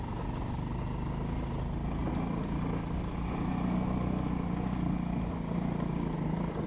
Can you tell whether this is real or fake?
real